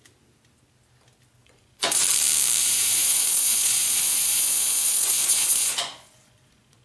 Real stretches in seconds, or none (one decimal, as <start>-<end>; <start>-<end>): 0.0-1.4; 2.0-2.6